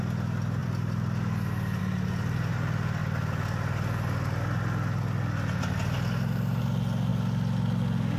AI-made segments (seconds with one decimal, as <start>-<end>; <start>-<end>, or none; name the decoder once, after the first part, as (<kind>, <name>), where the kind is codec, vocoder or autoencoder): 0.6-1.8 (vocoder, BigVGAN v2)